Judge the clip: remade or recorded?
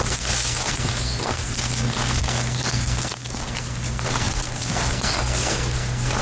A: remade